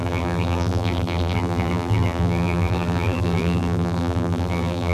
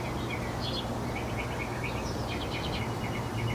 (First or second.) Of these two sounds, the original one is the second